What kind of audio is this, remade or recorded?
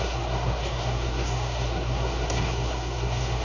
remade